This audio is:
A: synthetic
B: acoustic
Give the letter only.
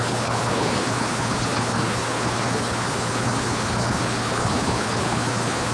A